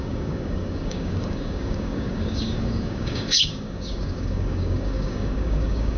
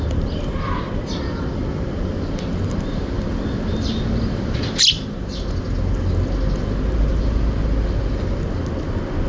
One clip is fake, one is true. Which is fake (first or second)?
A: first